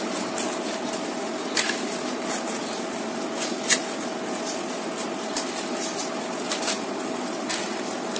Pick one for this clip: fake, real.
real